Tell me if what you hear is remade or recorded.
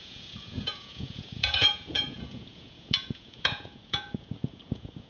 remade